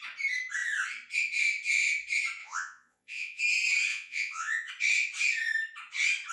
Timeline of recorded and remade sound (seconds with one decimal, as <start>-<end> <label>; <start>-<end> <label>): 0.0-2.4 recorded; 2.4-3.4 remade; 3.4-3.9 recorded; 3.9-4.7 remade; 4.7-6.3 recorded